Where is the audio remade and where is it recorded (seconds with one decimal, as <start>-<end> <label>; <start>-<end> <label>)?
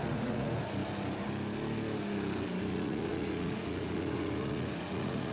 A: 0.0-0.8 remade; 0.8-2.7 recorded; 2.7-5.3 remade